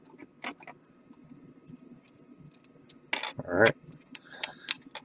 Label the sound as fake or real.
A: real